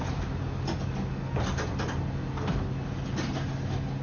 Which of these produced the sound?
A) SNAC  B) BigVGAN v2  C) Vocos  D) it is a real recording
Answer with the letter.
D